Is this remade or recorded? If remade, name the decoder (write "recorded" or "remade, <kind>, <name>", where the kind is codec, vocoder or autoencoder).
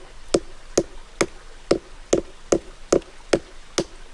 recorded